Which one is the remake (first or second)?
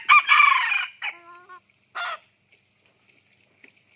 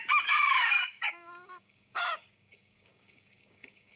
second